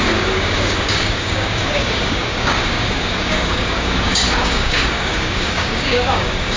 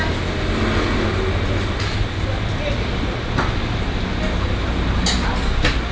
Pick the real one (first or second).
second